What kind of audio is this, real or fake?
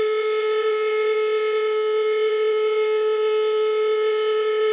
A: fake